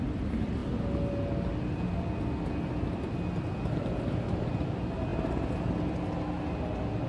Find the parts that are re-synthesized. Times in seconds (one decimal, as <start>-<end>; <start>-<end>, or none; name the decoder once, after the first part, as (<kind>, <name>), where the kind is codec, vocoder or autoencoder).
none